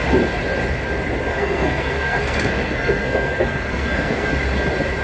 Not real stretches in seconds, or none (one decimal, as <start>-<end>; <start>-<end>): 1.3-4.3